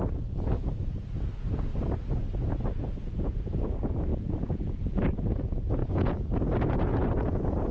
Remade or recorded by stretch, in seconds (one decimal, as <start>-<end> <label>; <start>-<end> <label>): 0.0-1.7 remade; 1.7-3.0 recorded; 3.0-7.7 remade